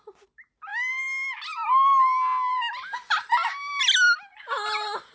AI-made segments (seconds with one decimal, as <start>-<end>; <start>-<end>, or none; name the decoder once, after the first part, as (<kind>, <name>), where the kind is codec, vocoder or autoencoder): none